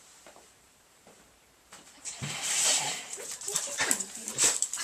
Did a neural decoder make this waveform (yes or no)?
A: yes